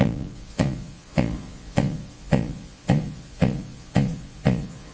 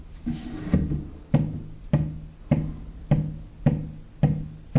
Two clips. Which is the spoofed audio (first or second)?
first